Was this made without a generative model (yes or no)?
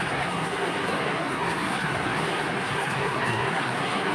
no